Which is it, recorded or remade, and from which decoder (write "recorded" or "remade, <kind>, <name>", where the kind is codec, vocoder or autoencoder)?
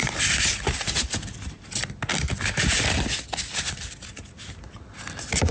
recorded